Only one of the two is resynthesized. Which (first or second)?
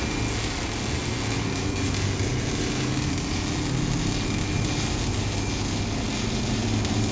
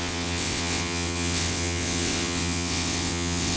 second